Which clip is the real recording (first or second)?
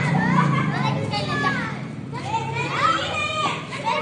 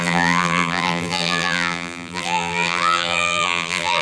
first